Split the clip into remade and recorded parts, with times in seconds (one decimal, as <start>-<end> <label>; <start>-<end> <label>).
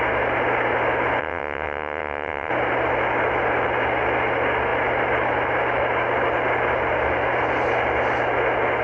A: 0.0-1.2 recorded; 1.2-2.5 remade; 2.5-8.8 recorded